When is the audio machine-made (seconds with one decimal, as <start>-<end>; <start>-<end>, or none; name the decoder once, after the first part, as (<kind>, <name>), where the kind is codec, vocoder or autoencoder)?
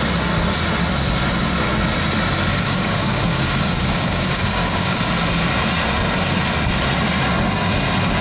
2.5-5.0 (codec, DAC)